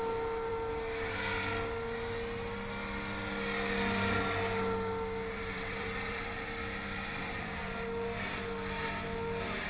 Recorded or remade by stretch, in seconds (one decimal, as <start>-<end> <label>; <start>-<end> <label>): 0.0-5.3 recorded; 5.3-7.6 remade; 7.6-9.7 recorded